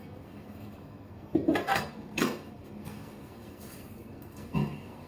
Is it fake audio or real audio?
fake